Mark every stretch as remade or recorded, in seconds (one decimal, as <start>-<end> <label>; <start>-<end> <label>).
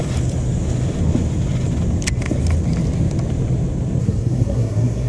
0.0-4.0 recorded; 4.0-5.1 remade